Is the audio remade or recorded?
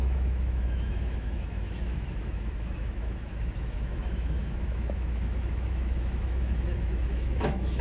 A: remade